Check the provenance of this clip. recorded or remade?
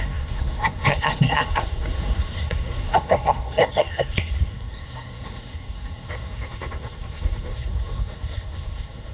remade